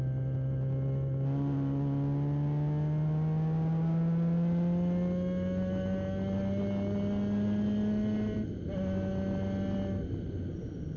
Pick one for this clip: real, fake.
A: real